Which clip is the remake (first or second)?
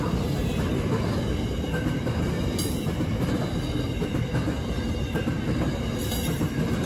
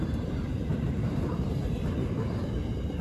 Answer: second